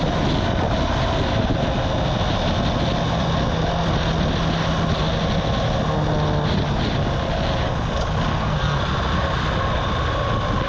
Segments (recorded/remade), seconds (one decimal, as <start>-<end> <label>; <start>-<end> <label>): 0.0-8.3 recorded; 8.3-8.8 remade; 8.8-10.7 recorded